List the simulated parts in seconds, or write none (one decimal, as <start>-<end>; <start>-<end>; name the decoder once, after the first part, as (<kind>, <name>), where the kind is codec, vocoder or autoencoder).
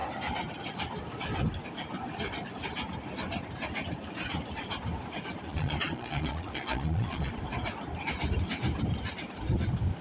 5.5-7.3 (vocoder, Vocos)